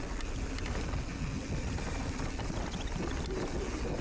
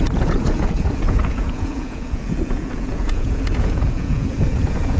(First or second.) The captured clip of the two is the first